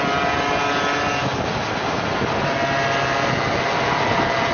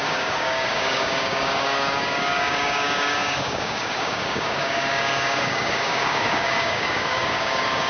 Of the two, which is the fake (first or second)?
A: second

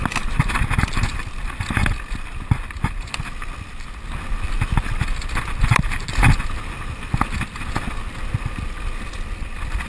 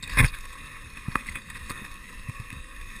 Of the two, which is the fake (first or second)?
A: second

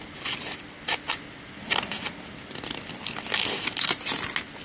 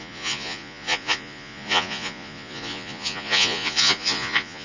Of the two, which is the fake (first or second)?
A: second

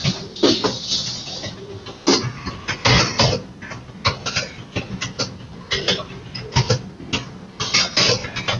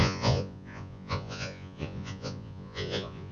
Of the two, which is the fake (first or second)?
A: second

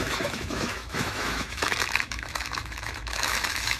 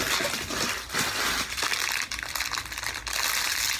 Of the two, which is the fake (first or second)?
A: first